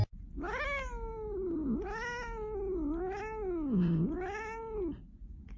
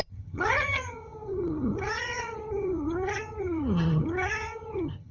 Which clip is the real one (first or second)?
first